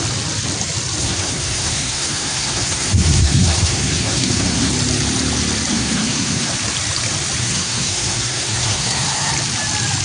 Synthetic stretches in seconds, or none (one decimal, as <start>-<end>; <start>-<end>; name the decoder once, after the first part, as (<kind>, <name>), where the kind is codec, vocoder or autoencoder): 1.0-4.7 (codec, SNAC); 5.7-6.5; 7.4-9.3